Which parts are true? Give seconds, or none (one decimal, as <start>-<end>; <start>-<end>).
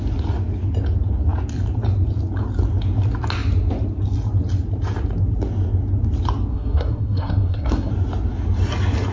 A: 0.0-6.5; 7.9-9.1